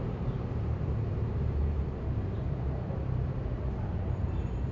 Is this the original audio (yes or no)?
no